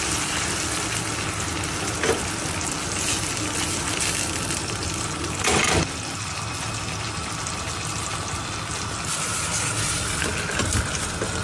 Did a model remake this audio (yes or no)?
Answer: no